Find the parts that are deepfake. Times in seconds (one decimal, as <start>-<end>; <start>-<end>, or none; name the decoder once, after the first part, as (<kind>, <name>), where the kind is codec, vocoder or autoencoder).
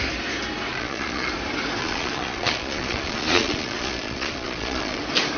0.7-1.3 (vocoder, Vocos); 1.8-5.0